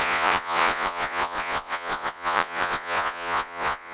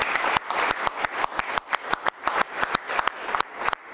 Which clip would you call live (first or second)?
second